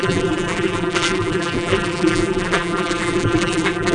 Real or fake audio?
fake